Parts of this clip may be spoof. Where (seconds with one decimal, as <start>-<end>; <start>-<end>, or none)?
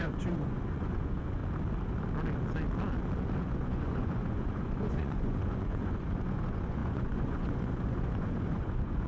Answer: 0.0-1.4; 3.4-9.1